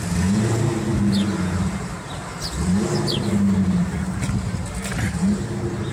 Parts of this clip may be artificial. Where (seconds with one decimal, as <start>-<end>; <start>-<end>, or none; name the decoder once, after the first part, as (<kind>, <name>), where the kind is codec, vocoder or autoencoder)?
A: 4.9-5.9 (vocoder, BigVGAN v2)